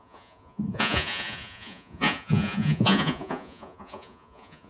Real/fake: fake